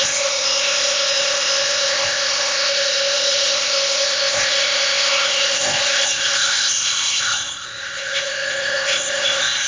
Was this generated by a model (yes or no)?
yes